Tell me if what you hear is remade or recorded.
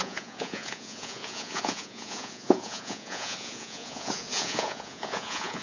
remade